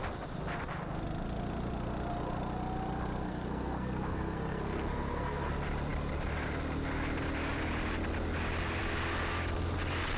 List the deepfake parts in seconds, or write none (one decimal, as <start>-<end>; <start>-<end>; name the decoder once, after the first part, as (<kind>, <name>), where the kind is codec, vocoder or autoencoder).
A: 3.2-5.5 (codec, SNAC)